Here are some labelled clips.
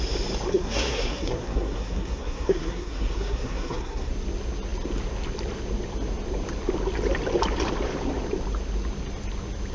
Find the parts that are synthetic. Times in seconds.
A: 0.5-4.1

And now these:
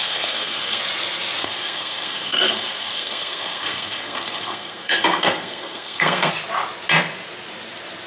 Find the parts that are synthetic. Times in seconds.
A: 0.0-0.8; 1.4-6.3

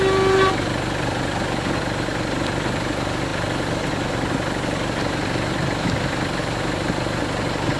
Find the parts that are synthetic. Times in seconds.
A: none